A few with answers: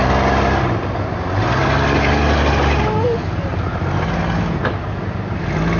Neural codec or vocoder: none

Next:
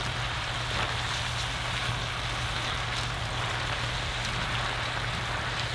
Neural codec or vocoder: none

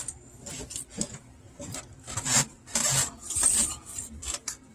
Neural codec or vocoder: none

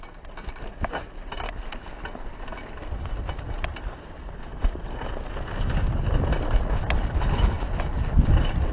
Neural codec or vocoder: none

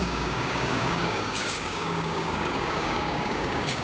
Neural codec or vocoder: codec, DAC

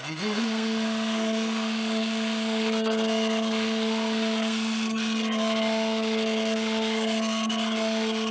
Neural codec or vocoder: codec, SNAC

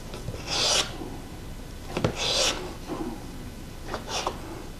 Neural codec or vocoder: none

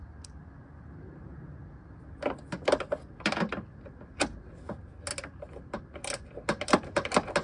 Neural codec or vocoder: none